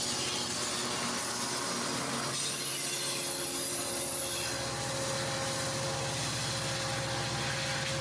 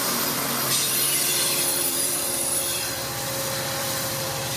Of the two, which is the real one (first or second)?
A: first